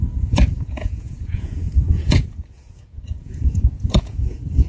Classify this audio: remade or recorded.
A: remade